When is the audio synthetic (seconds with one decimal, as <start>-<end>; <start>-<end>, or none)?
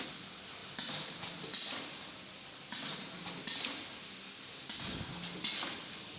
none